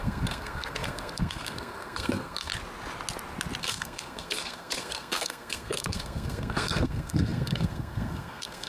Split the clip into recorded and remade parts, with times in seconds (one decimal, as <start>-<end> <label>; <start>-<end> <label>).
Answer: 0.0-2.5 remade; 2.5-3.6 recorded; 3.6-8.7 remade